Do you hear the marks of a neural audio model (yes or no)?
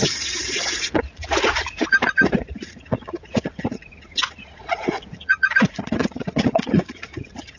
yes